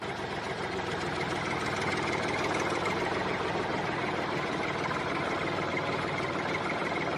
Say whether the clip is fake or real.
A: fake